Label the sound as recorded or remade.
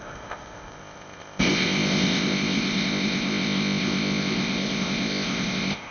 remade